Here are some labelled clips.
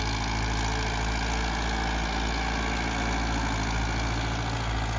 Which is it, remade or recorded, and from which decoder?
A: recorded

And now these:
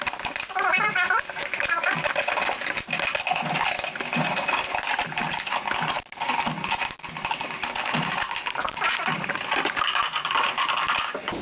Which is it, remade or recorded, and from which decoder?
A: recorded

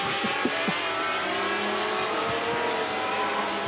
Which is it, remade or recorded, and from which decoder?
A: recorded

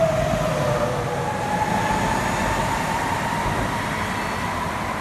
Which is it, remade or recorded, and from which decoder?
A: recorded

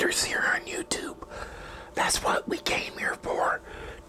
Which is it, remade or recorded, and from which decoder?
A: recorded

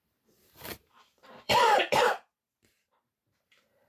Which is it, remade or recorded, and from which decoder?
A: remade, vocoder, BigVGAN v2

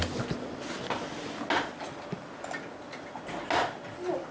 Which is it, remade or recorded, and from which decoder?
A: recorded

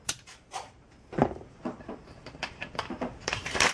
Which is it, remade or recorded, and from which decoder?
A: remade, vocoder, BigVGAN v2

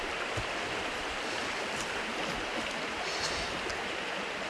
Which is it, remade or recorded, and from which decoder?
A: recorded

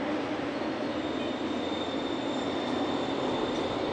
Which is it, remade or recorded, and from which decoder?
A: recorded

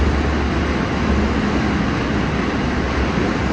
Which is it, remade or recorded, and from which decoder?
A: recorded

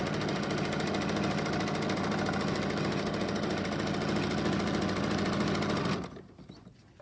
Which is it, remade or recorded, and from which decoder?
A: recorded